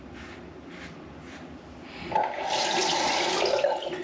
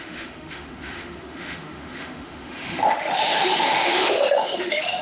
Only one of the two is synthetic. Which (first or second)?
second